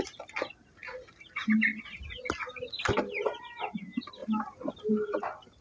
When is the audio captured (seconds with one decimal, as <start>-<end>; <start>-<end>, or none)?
0.0-5.6